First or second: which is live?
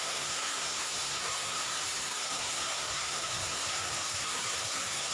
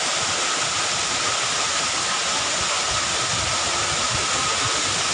second